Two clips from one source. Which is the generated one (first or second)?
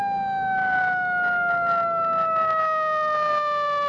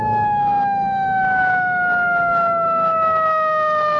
second